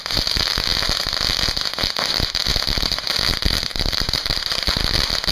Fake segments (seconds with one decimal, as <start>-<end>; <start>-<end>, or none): 3.7-4.7